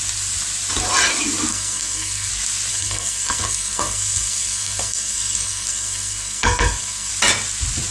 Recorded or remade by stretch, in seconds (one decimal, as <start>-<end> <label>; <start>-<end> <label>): 0.0-1.5 recorded; 1.5-2.3 remade; 2.3-2.7 recorded; 2.7-7.1 remade; 7.1-7.9 recorded